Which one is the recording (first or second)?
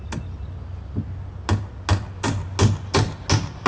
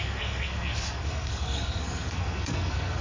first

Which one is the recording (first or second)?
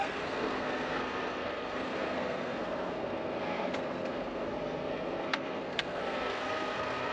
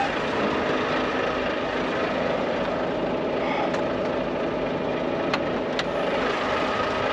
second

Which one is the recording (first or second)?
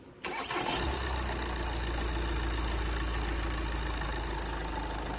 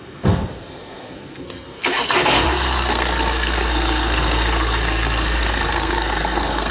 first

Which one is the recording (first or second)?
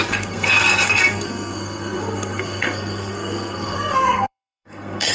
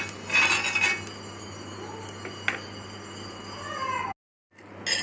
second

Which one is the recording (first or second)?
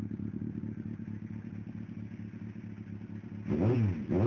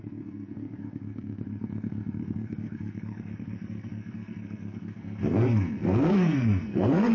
first